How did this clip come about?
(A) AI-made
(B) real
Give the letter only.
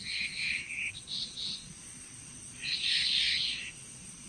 A